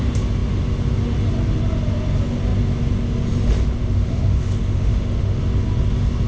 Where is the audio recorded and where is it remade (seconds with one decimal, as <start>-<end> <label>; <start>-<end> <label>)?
0.0-3.8 recorded; 3.8-5.4 remade; 5.4-6.3 recorded